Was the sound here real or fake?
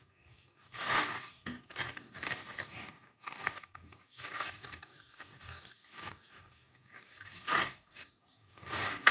fake